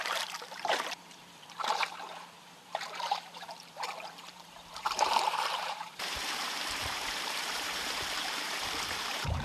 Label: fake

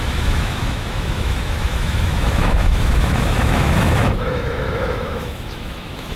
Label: fake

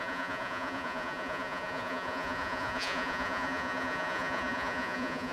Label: fake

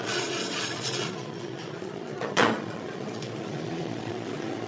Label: fake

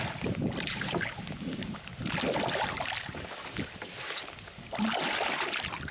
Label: real